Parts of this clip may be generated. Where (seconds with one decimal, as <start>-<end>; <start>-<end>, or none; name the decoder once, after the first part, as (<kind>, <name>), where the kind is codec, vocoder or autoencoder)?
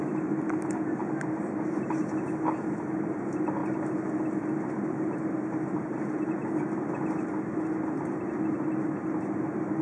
none